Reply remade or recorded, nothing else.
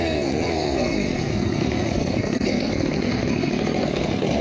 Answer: remade